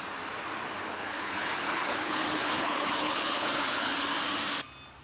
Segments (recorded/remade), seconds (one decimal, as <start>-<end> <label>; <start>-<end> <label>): 0.0-0.9 recorded; 0.9-3.9 remade; 3.9-5.0 recorded